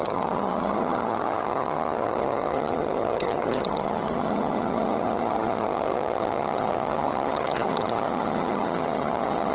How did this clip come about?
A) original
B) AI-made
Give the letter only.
B